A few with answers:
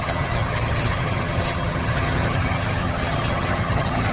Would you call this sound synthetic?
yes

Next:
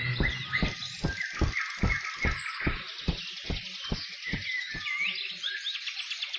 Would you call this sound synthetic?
no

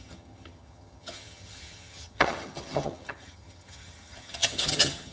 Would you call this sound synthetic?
yes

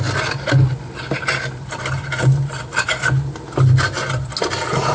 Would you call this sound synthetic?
no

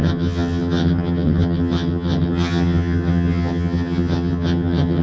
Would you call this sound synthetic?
yes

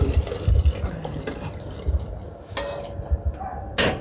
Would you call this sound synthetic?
no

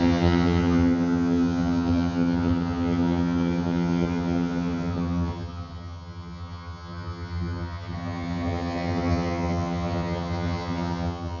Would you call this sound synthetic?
yes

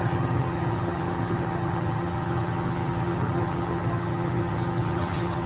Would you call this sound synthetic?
yes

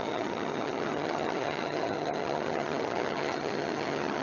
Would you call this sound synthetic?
yes